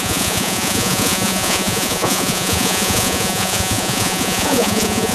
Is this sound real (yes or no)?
no